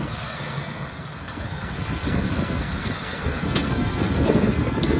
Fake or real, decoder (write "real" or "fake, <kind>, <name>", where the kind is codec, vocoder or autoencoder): fake, codec, SNAC